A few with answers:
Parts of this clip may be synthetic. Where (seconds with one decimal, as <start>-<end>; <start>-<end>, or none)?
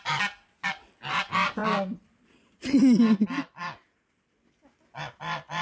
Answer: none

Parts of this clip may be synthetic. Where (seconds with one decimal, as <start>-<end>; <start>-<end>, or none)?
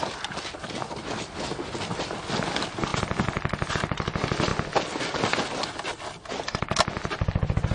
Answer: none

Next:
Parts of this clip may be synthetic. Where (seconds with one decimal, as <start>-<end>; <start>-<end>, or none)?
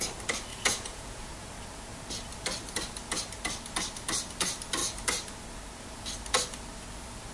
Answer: 0.5-1.3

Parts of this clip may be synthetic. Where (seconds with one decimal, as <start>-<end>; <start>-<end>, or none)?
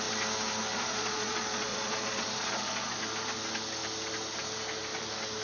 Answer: 0.7-3.0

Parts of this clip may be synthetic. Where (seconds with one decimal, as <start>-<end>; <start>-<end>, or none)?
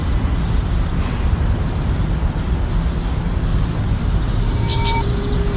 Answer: 3.5-5.6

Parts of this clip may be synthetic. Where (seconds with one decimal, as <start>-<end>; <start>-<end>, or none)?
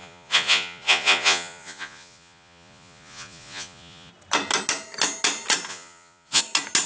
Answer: 0.0-4.1; 5.7-6.4